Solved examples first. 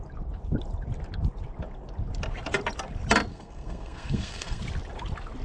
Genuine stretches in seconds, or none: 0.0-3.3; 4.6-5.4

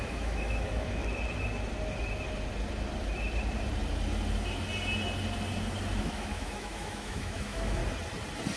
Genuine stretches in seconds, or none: 1.0-6.0; 7.8-8.6